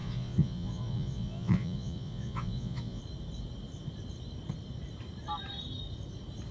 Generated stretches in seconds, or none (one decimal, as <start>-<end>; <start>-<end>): 0.0-3.0